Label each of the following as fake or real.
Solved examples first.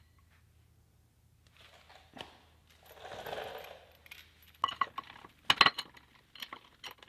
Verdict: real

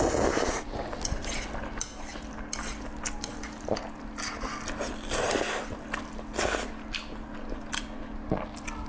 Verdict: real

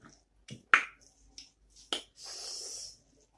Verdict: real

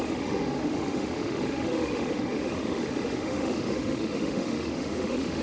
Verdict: fake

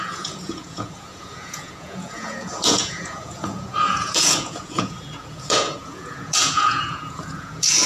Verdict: fake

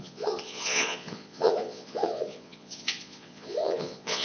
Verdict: fake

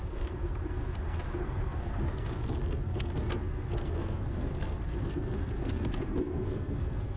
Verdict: fake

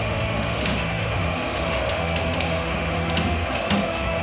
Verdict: fake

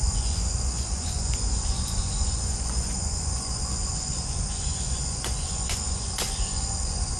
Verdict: fake